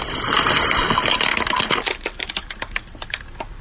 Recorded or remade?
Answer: recorded